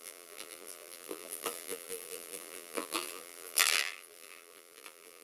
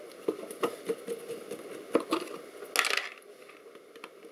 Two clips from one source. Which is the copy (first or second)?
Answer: first